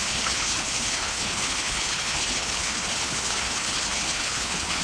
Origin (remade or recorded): remade